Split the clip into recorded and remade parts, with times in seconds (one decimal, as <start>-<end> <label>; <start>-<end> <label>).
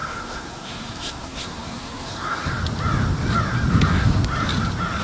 0.0-2.5 remade; 2.5-3.7 recorded; 3.7-4.2 remade; 4.2-5.0 recorded